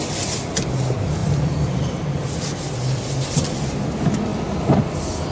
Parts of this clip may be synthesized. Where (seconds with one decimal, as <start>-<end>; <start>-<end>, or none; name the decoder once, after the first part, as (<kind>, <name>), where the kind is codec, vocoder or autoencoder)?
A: 1.2-3.0 (vocoder, BigVGAN v2)